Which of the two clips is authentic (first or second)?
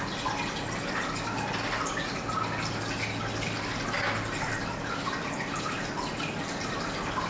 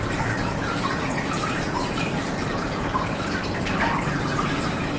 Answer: first